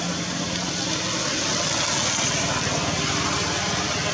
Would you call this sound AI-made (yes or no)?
no